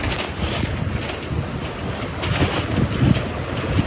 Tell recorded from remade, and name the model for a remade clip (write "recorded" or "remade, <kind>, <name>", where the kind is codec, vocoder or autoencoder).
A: recorded